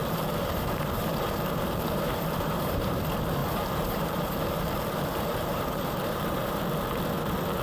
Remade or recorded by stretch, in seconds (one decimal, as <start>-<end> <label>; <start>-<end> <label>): 0.0-3.0 remade; 3.0-3.4 recorded; 3.4-6.6 remade; 6.6-7.6 recorded